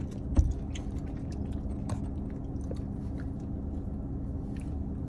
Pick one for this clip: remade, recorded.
recorded